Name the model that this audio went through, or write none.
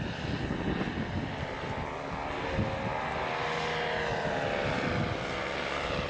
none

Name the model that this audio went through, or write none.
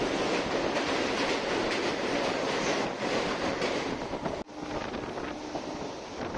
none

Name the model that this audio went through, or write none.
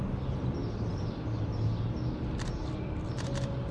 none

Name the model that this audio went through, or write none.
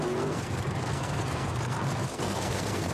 codec, SNAC